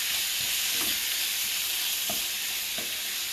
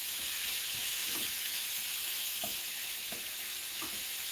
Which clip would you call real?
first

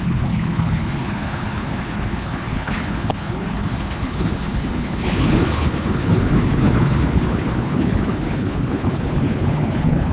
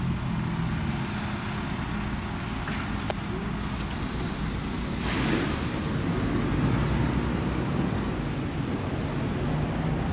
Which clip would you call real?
second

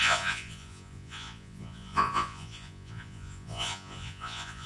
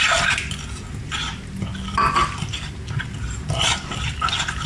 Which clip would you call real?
second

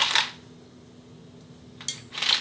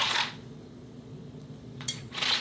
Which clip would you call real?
first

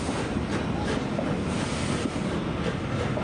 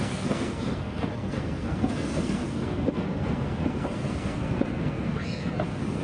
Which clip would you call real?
first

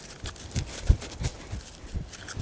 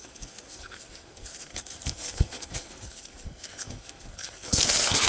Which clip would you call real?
first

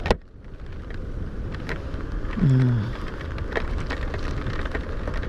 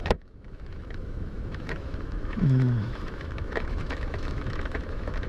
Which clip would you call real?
first